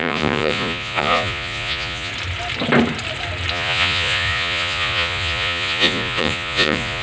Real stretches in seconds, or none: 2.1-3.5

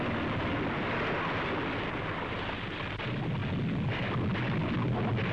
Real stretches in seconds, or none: 0.0-5.3

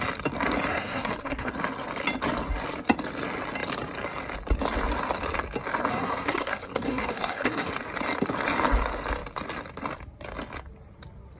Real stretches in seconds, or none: 0.0-0.7; 1.5-5.9; 7.7-11.4

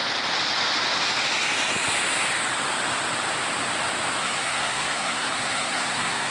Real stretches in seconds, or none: 0.0-4.2

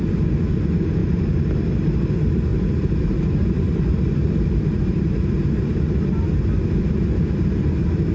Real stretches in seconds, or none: 0.0-1.0; 1.5-2.5; 5.3-8.1

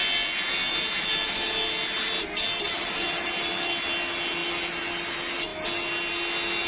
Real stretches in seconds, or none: 0.0-6.7